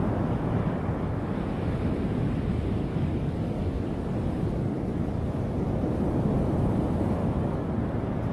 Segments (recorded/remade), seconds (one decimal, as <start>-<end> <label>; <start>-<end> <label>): 0.0-0.6 recorded; 0.6-1.4 remade; 1.4-2.9 recorded; 2.9-5.4 remade; 5.4-7.2 recorded; 7.2-7.8 remade; 7.8-8.3 recorded